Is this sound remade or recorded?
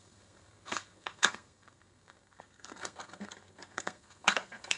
remade